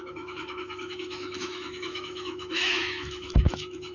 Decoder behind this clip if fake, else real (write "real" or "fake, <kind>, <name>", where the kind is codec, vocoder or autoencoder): fake, autoencoder, DAC-VAE